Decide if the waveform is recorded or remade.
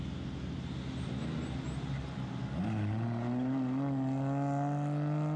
recorded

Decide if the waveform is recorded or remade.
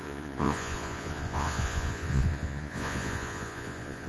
remade